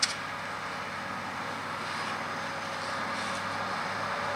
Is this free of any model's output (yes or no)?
yes